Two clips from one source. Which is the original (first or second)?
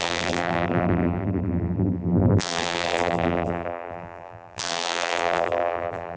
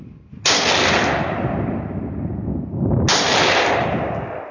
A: second